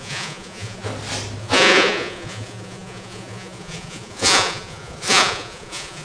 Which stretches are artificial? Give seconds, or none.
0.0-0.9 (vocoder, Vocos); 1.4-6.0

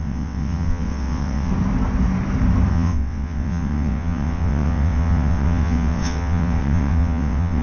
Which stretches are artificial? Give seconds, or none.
0.0-1.5 (vocoder, WaveNeXt); 2.7-7.6

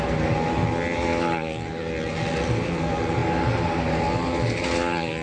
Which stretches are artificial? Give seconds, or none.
none

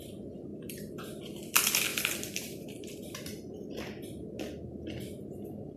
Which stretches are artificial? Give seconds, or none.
0.5-1.2 (vocoder, BigVGAN v2); 1.9-4.3

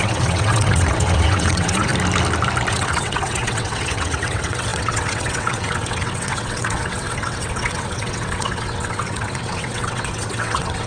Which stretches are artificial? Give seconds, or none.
0.0-1.9 (vocoder, WaveNeXt); 2.7-10.9

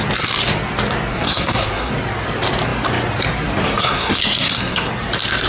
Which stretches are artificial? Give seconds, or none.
1.1-1.9 (codec, SNAC); 3.8-4.9

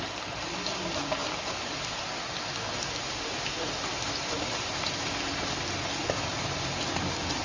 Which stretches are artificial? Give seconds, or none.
none